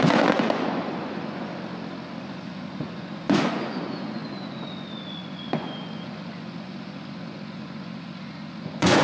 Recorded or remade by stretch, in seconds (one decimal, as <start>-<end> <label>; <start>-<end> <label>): 0.0-1.5 remade; 1.5-2.2 recorded; 2.2-9.0 remade